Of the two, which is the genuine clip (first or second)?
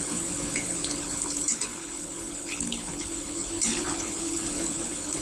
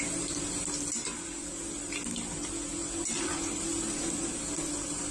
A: second